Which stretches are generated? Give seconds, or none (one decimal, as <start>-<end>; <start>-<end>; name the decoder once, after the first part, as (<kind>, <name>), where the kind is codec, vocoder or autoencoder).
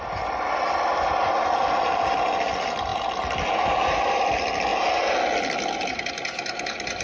none